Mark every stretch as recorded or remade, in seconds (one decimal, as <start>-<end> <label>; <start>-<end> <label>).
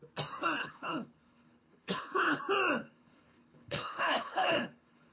0.0-0.6 recorded; 0.6-2.4 remade; 2.4-2.8 recorded; 2.8-5.1 remade